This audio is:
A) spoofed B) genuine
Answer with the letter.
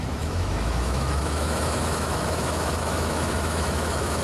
A